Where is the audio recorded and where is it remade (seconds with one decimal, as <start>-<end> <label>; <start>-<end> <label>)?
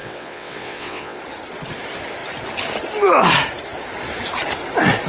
0.0-1.2 remade; 1.2-5.1 recorded